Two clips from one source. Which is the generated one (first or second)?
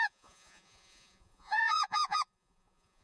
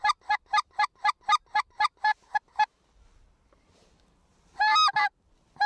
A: first